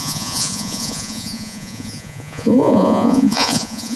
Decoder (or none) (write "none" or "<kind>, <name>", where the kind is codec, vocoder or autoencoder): vocoder, Vocos